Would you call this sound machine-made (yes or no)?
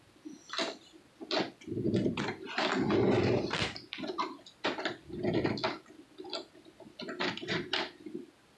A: no